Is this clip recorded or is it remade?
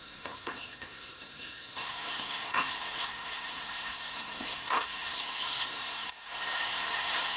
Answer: remade